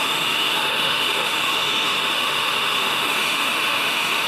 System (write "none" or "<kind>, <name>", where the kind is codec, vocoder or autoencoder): autoencoder, DAC-VAE